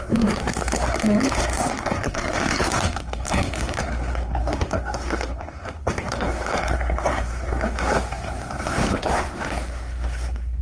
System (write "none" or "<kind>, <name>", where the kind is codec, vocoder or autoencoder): codec, SNAC